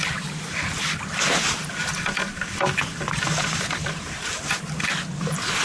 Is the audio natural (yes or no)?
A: yes